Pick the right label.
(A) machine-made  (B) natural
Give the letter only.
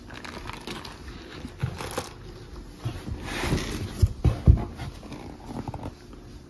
B